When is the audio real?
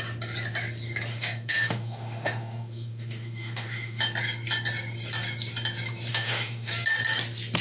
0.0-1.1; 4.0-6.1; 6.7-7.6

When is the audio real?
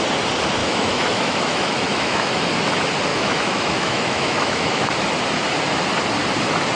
0.0-0.6; 2.4-3.1; 4.9-6.7